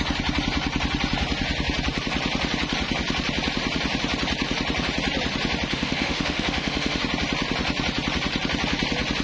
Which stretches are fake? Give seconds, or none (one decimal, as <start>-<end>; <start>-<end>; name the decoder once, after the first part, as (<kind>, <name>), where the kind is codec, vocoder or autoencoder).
5.7-7.0 (autoencoder, DAC-VAE)